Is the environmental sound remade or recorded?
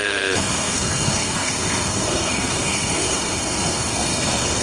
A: remade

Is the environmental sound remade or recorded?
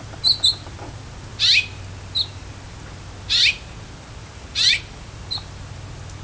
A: recorded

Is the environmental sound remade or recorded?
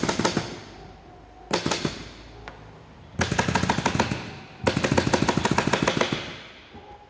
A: recorded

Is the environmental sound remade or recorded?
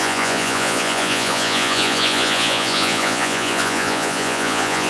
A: remade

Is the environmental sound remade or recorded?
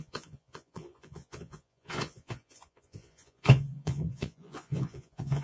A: remade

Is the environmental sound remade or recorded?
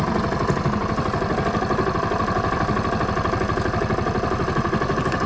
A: recorded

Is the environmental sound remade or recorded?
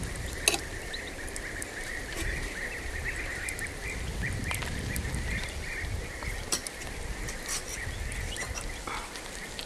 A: recorded